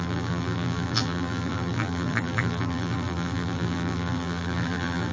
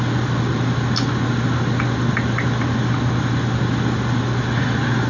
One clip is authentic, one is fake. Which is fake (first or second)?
first